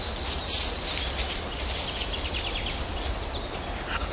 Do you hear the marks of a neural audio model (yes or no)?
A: no